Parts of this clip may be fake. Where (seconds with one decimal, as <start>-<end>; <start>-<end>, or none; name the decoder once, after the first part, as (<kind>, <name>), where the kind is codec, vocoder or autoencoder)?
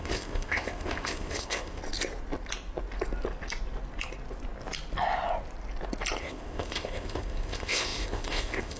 0.0-1.8 (codec, ZipCodec); 6.2-8.8